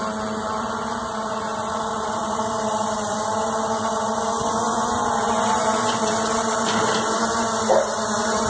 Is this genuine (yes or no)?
no